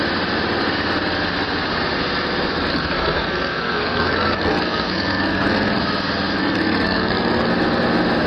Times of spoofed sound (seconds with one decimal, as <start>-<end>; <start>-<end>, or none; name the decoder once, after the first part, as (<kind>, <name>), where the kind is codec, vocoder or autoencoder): 2.7-5.8 (codec, SNAC); 6.4-7.5